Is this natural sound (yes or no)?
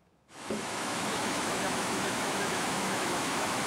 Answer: no